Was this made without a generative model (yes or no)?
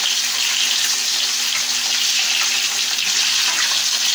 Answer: yes